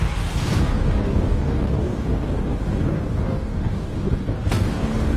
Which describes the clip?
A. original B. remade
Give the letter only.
B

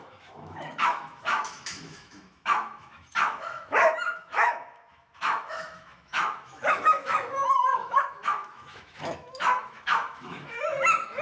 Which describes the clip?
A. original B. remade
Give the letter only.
B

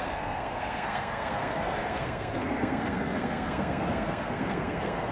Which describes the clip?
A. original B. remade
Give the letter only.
B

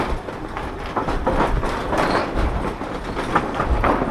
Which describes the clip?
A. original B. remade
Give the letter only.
A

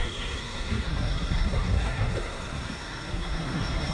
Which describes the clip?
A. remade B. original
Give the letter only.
A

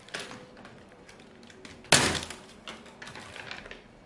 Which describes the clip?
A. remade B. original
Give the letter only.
B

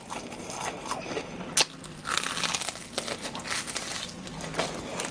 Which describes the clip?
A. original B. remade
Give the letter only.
A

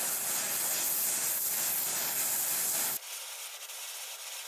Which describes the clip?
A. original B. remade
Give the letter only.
A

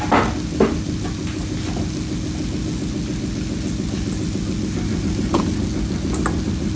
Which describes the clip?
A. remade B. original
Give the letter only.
B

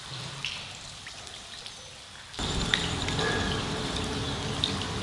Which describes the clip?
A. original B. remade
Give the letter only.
A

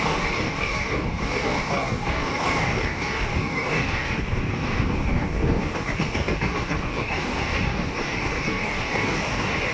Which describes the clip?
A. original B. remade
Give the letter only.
B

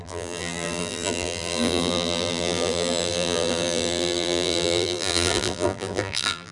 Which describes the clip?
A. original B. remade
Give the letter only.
B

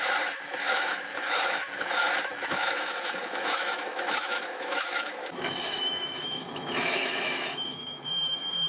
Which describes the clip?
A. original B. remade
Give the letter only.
B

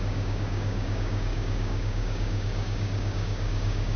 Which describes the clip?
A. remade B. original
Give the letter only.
A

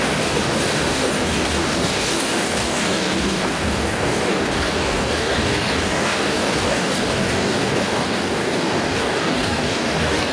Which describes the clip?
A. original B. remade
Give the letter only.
B